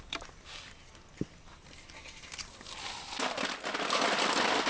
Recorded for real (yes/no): yes